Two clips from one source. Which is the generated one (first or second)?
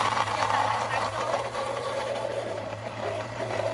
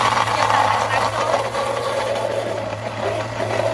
first